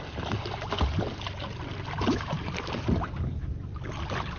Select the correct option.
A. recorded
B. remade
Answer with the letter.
A